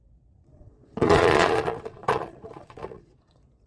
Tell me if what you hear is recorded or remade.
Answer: remade